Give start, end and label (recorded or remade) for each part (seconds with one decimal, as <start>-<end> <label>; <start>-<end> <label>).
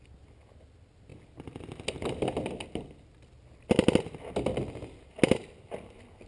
0.0-6.3 recorded